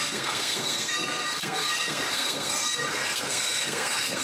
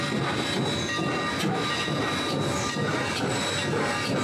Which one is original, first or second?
second